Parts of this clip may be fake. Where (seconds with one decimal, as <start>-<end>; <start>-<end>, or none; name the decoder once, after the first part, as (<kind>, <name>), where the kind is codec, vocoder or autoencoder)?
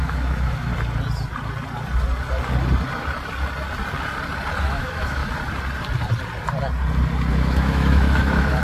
0.0-0.7 (autoencoder, DAC-VAE); 4.6-5.2; 7.3-8.6